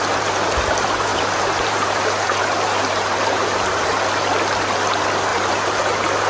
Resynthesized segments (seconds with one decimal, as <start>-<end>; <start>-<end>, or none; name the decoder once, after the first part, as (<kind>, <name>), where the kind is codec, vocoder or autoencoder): 1.1-4.0 (vocoder, BigVGAN v2); 5.3-5.8